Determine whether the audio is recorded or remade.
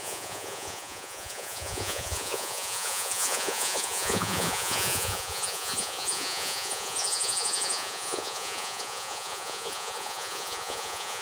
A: remade